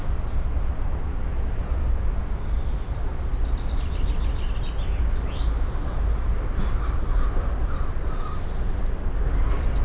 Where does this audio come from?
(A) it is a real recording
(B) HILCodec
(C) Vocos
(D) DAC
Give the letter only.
A